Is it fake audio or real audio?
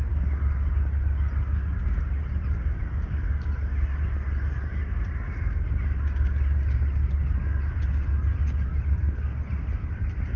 real